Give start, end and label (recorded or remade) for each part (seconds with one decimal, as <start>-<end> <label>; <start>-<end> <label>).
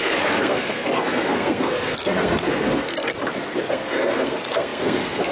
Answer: 0.0-3.1 remade; 3.1-3.7 recorded; 3.7-5.3 remade